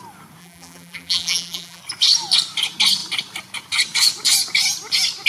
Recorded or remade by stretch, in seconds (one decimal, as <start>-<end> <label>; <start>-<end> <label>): 0.0-0.4 recorded; 0.4-1.8 remade; 1.8-5.3 recorded